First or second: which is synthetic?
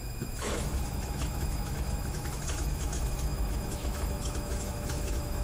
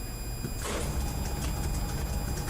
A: first